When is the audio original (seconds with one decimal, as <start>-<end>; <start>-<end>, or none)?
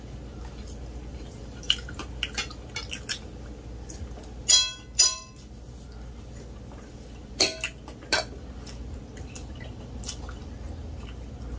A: 0.0-1.1; 2.1-11.6